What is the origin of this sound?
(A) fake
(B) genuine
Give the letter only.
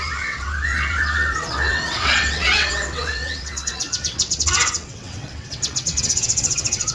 A